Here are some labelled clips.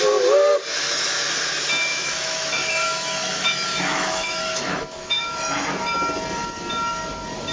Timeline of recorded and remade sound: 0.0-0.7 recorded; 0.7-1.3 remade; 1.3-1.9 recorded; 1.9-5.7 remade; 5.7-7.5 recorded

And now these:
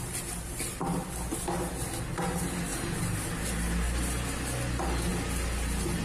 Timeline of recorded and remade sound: 0.0-6.0 recorded

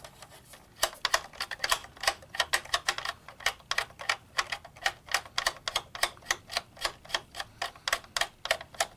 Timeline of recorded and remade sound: 0.0-9.0 recorded

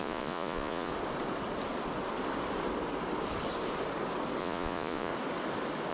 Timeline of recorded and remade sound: 0.0-0.9 remade; 0.9-4.4 recorded; 4.4-5.1 remade; 5.1-5.9 recorded